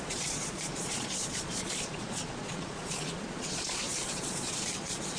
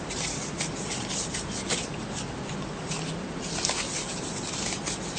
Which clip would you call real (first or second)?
second